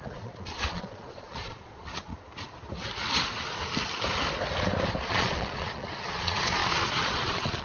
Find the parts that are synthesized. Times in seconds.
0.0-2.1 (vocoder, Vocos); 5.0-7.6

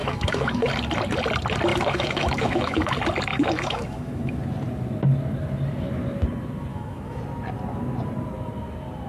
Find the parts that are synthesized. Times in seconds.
0.0-0.7 (autoencoder, DAC-VAE); 1.7-2.9; 3.3-4.4; 6.7-7.2

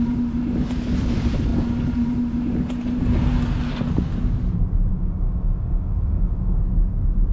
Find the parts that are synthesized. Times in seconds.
4.9-6.6 (autoencoder, DAC-VAE)

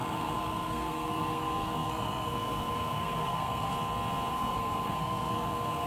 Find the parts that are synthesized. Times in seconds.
0.0-3.7 (codec, SNAC); 4.3-5.9